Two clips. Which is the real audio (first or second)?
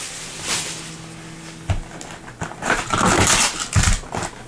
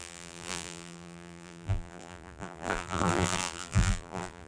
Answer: first